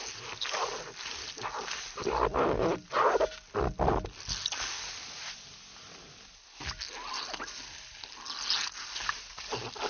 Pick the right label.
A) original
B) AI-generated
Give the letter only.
A